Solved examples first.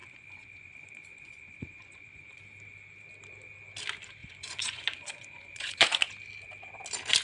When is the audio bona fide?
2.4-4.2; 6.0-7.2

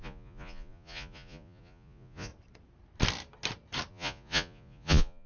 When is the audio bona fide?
2.3-3.9

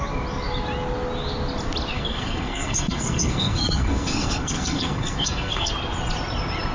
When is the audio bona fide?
0.0-1.9; 5.7-6.7

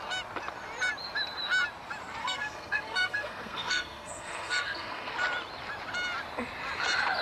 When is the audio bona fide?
0.0-2.2; 5.1-7.2

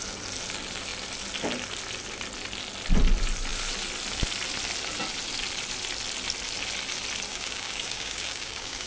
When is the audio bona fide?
0.0-7.3

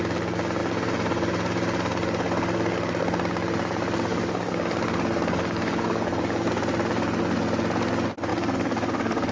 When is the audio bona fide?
0.0-4.1; 6.5-8.3

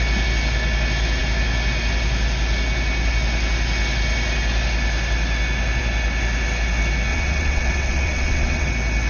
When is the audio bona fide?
0.0-7.1; 8.7-9.1